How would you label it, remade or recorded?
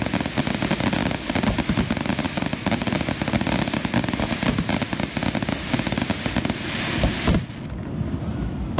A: recorded